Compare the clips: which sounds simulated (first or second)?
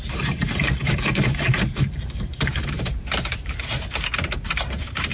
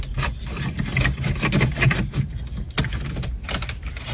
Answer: first